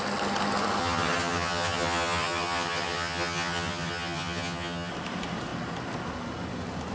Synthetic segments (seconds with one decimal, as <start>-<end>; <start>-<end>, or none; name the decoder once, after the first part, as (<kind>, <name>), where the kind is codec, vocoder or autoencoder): 0.8-4.9 (vocoder, HiFi-GAN)